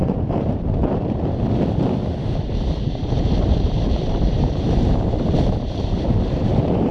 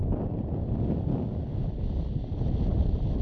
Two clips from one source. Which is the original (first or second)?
second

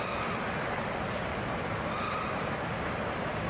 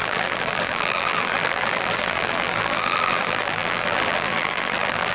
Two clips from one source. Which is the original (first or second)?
first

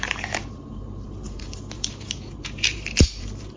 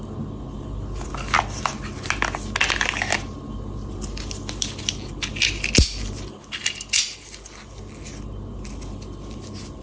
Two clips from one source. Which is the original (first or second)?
second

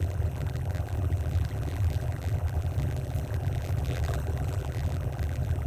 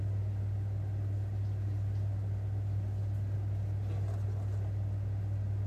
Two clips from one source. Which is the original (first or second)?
second